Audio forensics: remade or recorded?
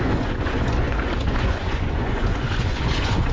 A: remade